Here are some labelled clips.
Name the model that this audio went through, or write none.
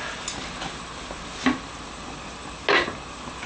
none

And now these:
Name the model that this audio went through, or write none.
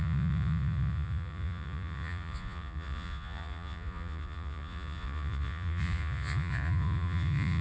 vocoder, Vocos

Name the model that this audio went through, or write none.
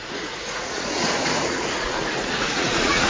vocoder, Vocos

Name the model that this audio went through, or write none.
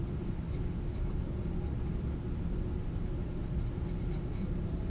none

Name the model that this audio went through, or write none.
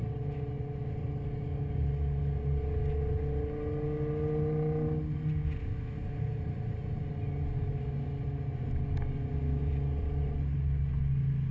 none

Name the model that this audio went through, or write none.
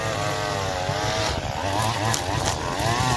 none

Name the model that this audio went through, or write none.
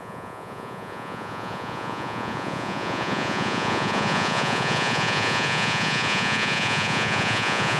vocoder, Vocos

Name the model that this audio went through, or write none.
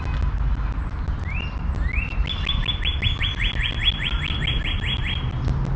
none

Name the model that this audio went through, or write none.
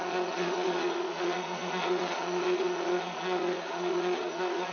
vocoder, Vocos